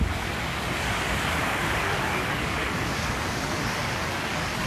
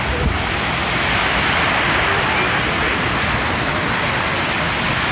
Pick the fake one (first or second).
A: first